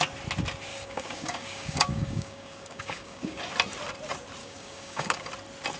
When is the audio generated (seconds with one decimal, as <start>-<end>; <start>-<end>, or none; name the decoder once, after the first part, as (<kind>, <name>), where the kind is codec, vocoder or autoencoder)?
0.7-3.4 (codec, DAC); 4.4-5.3